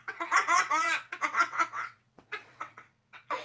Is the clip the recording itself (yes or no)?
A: no